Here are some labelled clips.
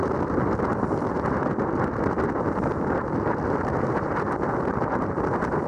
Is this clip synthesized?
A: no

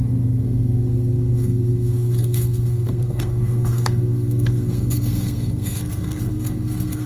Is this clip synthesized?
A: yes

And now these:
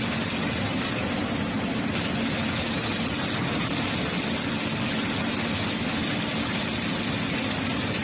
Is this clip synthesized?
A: no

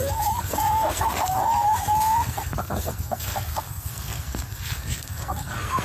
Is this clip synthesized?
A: yes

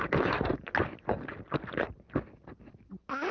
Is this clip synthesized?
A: no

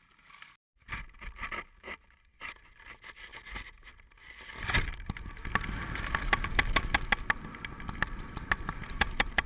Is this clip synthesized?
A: no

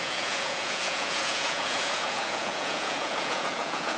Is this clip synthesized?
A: yes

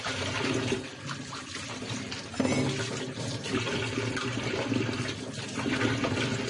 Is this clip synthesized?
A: no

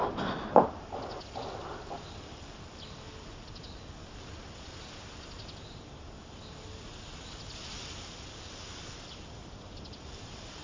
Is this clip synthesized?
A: no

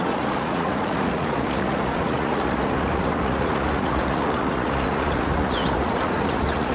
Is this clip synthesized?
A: yes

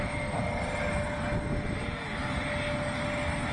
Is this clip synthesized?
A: no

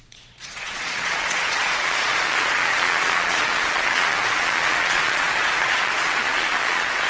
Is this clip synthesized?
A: yes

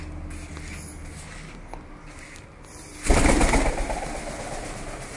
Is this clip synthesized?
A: no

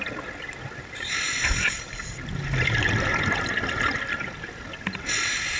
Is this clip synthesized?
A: no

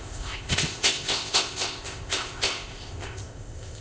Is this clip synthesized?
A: yes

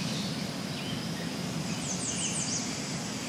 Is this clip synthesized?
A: no